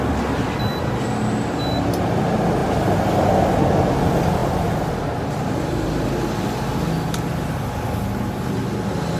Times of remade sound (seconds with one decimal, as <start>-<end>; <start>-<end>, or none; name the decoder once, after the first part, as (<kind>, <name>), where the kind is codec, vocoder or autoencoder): none